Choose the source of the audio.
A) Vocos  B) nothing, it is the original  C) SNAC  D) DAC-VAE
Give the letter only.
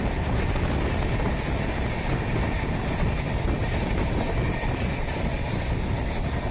B